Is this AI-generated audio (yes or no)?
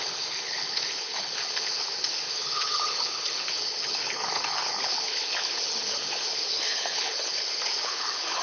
yes